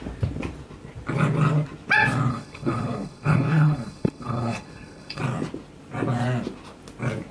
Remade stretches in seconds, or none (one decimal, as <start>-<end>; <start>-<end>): 2.3-5.2